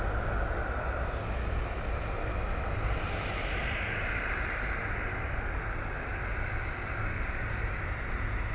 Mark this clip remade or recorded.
recorded